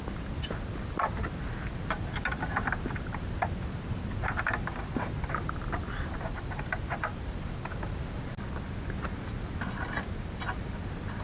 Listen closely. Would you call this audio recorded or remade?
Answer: recorded